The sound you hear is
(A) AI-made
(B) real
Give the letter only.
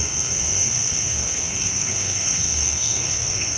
A